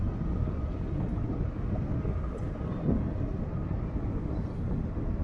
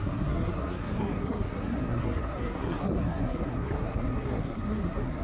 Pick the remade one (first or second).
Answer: second